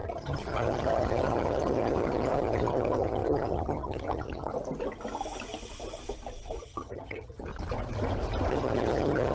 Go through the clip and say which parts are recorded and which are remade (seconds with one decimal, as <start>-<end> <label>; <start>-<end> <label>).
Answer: 0.0-4.5 remade; 4.5-6.6 recorded; 6.6-7.5 remade; 7.5-8.5 recorded; 8.5-9.3 remade